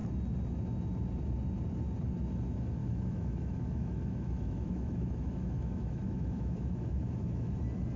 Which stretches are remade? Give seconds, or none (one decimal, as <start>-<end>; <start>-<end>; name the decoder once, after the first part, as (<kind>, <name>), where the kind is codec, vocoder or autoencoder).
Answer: 2.8-7.6 (autoencoder, DAC-VAE)